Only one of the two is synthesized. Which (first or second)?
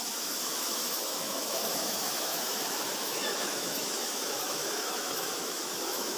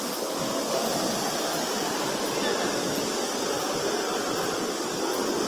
first